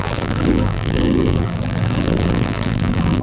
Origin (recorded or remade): remade